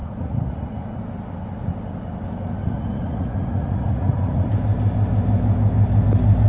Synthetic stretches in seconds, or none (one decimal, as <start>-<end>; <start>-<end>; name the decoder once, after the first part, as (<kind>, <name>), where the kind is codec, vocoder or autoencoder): 0.0-1.0 (vocoder, Vocos); 2.6-4.5